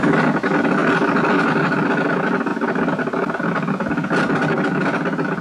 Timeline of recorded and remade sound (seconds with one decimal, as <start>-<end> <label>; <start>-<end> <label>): 0.0-0.8 recorded; 0.8-1.4 remade; 1.4-2.5 recorded; 2.5-3.0 remade; 3.0-5.4 recorded